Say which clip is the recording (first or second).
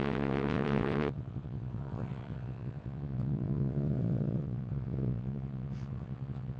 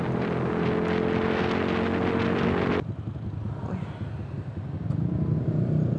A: second